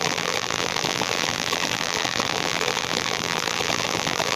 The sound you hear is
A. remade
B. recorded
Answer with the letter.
A